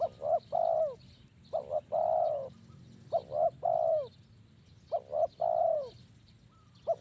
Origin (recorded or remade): recorded